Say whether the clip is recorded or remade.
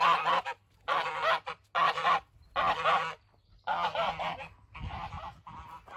recorded